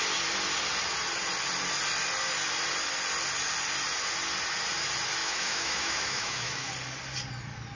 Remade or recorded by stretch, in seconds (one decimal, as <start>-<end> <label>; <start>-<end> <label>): 0.0-5.2 recorded; 5.2-6.7 remade; 6.7-7.7 recorded